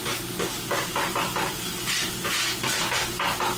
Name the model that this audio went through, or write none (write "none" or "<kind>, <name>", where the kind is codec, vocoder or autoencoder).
none